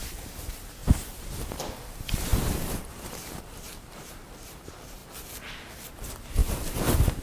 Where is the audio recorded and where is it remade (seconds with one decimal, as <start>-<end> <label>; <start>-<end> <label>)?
0.0-5.0 remade; 5.0-5.9 recorded; 5.9-7.2 remade